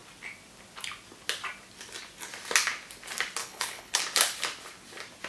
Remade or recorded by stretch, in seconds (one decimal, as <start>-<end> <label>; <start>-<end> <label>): 0.0-3.4 recorded; 3.4-4.0 remade; 4.0-5.3 recorded